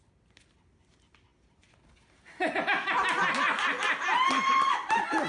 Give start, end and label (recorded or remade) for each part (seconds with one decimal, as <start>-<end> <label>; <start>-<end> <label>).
0.0-5.3 recorded